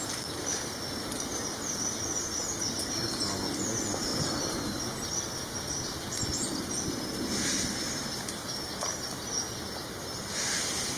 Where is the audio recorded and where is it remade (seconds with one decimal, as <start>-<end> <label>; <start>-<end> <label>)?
0.0-4.1 recorded; 4.1-5.1 remade; 5.1-11.0 recorded

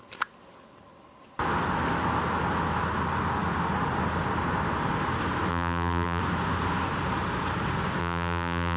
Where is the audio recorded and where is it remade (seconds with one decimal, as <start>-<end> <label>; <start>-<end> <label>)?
0.0-5.5 recorded; 5.5-6.2 remade; 6.2-8.0 recorded; 8.0-8.8 remade

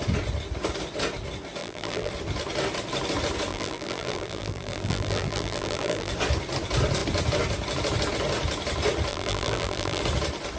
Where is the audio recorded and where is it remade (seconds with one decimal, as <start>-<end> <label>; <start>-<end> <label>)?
0.0-1.6 recorded; 1.6-2.1 remade; 2.1-3.5 recorded; 3.5-6.1 remade; 6.1-9.1 recorded; 9.1-10.0 remade; 10.0-10.6 recorded

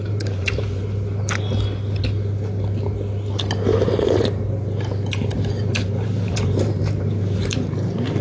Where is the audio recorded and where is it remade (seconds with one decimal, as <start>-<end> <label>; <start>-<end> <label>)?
0.0-0.8 remade; 0.8-5.6 recorded; 5.6-8.2 remade

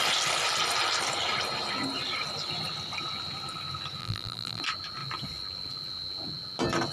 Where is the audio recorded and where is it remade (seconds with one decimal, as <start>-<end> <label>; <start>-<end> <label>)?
0.0-4.0 recorded; 4.0-4.6 remade; 4.6-6.9 recorded

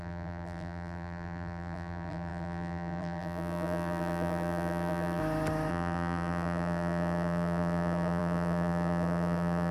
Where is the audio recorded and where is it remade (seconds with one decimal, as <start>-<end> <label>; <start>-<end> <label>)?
0.0-5.2 remade; 5.2-5.7 recorded; 5.7-9.7 remade

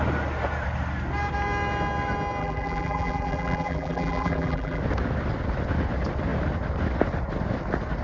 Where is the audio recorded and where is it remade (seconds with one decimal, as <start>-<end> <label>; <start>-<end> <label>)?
0.0-2.4 recorded; 2.4-4.8 remade; 4.8-8.0 recorded

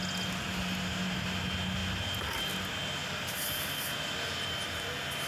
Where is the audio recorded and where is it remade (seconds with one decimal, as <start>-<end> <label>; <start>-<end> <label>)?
0.0-3.0 recorded; 3.0-4.1 remade; 4.1-5.3 recorded